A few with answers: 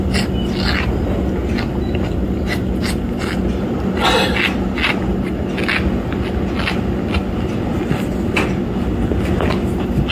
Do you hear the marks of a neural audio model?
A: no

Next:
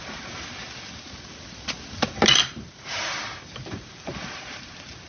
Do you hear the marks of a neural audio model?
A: no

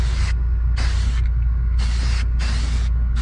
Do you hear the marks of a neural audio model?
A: no